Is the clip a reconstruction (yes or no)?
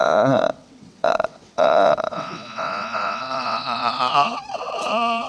yes